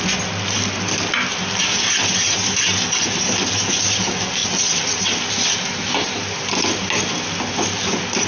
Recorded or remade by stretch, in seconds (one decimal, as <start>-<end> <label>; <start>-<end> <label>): 0.0-8.3 recorded